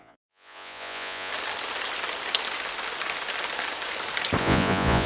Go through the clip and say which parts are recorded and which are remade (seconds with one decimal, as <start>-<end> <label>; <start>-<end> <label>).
0.0-1.3 remade; 1.3-4.4 recorded; 4.4-5.1 remade